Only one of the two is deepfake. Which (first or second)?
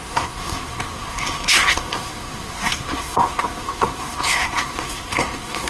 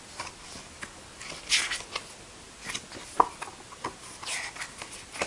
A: first